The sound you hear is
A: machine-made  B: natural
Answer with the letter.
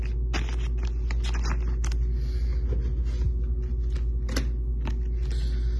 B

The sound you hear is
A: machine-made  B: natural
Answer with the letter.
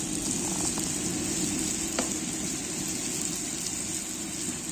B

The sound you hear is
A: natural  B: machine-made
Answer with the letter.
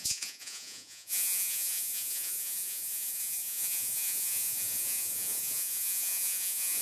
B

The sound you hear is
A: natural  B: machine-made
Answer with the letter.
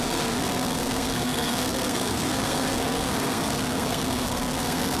B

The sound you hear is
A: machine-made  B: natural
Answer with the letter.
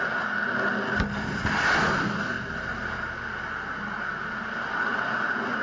B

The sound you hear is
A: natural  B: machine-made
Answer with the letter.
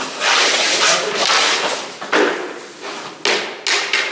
A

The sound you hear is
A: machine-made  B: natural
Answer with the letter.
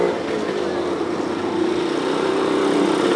B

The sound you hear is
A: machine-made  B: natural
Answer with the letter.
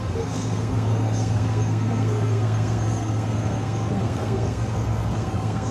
A